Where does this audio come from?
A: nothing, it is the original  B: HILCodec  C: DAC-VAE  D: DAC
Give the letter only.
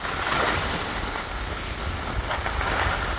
A